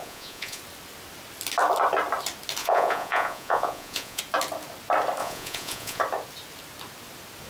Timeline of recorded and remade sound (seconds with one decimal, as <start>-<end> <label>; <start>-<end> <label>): 0.0-0.6 remade; 0.6-2.6 recorded; 2.6-4.2 remade; 4.2-5.2 recorded; 5.2-6.0 remade; 6.0-7.5 recorded